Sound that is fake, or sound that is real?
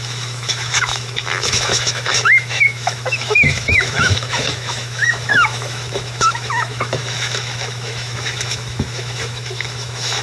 fake